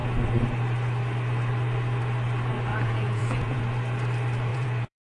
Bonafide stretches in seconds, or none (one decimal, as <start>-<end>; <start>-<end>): 0.0-2.7; 3.6-4.5